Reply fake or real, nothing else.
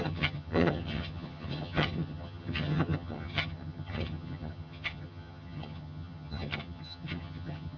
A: fake